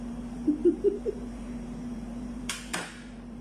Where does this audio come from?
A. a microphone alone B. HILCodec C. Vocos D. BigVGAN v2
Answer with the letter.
D